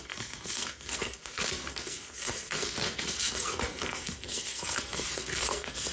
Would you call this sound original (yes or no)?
no